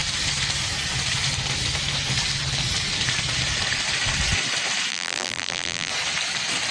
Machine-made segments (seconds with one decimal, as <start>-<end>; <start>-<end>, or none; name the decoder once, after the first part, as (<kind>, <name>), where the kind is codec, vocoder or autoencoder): 4.9-5.9 (vocoder, BigVGAN v2)